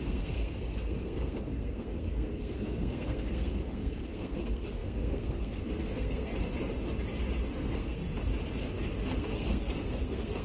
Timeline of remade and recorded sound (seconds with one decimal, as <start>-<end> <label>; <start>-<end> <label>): 0.0-6.3 remade; 6.3-7.5 recorded; 7.5-8.0 remade; 8.0-8.9 recorded; 8.9-10.4 remade